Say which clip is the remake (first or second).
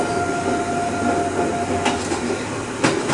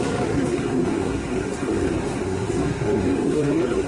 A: second